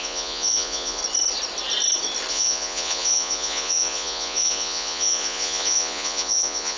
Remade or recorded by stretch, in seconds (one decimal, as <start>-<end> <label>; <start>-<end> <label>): 0.0-1.0 remade; 1.0-2.3 recorded; 2.3-6.8 remade